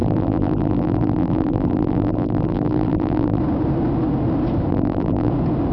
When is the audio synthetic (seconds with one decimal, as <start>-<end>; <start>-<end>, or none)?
0.0-3.4; 4.7-5.3